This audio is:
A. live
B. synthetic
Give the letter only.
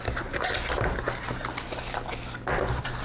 A